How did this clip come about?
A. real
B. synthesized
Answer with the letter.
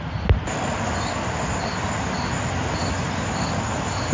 A